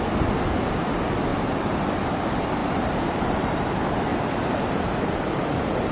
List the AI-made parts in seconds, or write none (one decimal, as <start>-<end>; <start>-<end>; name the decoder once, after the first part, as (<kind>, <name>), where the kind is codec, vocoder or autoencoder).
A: 1.3-1.8 (vocoder, BigVGAN v2); 2.6-3.5; 4.1-5.9

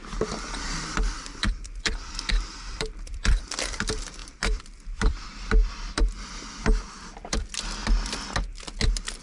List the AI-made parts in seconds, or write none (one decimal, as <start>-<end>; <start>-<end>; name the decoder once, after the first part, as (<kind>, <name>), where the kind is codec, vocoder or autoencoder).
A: 0.0-7.8 (vocoder, BigVGAN v2)

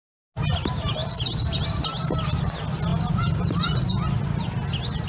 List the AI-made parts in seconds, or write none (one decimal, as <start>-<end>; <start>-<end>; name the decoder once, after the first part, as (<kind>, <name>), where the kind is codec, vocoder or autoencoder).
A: 2.9-3.8 (vocoder, BigVGAN v2)